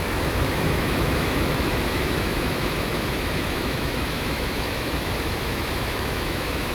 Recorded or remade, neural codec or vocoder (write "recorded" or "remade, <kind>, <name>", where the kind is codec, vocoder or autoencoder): remade, autoencoder, DAC-VAE